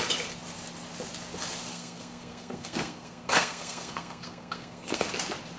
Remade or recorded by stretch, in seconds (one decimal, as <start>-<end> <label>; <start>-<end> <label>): 0.0-1.7 recorded; 1.7-5.1 remade; 5.1-5.6 recorded